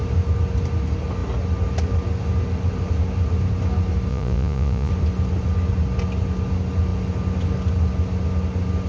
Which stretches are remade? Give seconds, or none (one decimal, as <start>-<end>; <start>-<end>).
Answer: 4.1-4.9